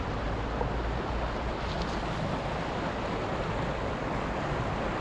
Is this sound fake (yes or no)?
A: no